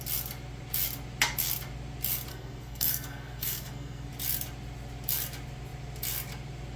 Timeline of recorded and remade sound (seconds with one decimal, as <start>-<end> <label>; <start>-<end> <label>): 0.0-2.3 recorded; 2.3-4.1 remade; 4.1-6.8 recorded

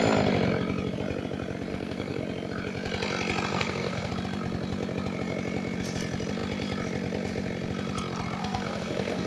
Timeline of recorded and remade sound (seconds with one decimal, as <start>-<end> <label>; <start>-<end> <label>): 0.0-1.7 recorded; 1.7-2.2 remade; 2.2-3.5 recorded; 3.5-4.1 remade; 4.1-8.4 recorded; 8.4-9.3 remade

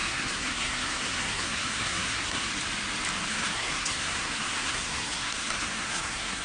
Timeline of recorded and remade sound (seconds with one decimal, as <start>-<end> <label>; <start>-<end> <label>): 0.0-2.5 remade; 2.5-3.3 recorded; 3.3-6.4 remade